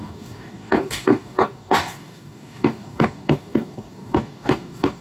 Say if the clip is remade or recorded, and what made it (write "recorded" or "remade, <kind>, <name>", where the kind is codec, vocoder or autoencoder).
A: remade, codec, DAC